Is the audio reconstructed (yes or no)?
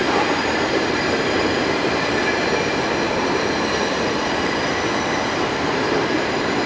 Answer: no